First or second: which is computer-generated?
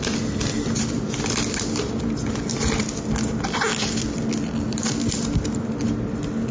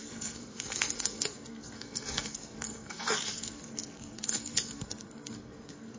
second